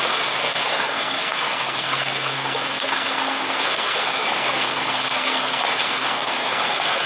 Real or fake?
fake